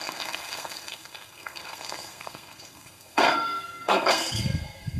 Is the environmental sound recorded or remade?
remade